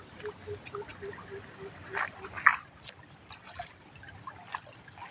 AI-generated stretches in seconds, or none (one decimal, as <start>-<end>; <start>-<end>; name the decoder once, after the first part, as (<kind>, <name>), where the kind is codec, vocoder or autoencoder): none